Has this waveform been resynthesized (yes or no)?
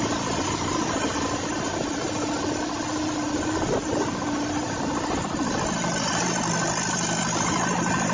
no